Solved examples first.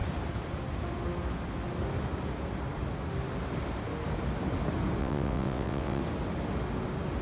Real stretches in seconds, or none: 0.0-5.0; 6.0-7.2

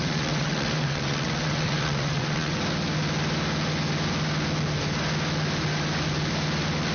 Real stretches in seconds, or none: 2.6-6.9

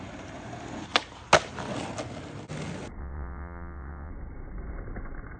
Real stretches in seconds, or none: 0.0-3.0; 4.1-5.4

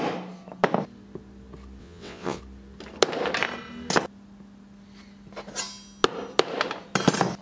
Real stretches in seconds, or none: 0.0-1.8; 2.4-7.4

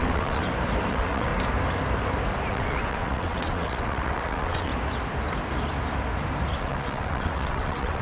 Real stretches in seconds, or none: 0.4-0.9; 1.3-2.5; 4.7-6.6